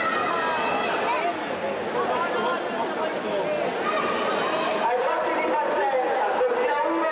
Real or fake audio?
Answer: real